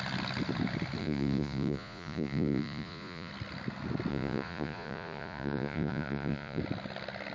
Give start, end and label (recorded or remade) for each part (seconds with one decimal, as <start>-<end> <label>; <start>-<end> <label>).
0.0-1.0 recorded; 1.0-3.3 remade; 3.3-4.1 recorded; 4.1-6.6 remade; 6.6-7.3 recorded